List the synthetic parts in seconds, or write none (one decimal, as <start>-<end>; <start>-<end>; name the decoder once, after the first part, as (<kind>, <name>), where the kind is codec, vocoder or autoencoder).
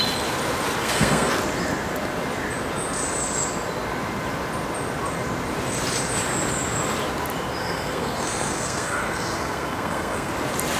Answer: 0.8-1.3 (codec, SNAC); 7.6-10.3